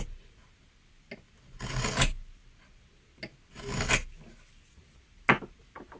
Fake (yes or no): no